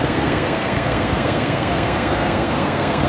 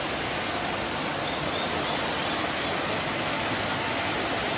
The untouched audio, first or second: second